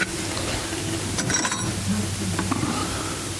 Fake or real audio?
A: real